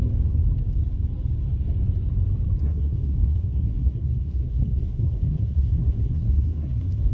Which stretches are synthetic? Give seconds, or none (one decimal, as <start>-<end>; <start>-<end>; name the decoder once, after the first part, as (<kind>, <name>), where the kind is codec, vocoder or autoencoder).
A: 2.6-7.1 (codec, SNAC)